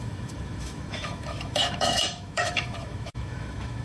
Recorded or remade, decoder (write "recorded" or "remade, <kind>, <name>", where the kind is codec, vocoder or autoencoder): remade, autoencoder, DAC-VAE